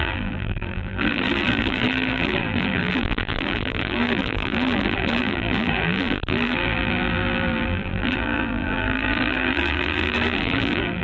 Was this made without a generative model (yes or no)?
no